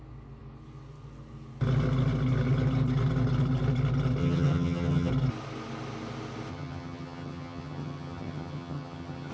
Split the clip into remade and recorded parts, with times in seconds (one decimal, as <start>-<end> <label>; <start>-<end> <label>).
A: 0.0-4.2 recorded; 4.2-5.1 remade; 5.1-6.5 recorded; 6.5-9.3 remade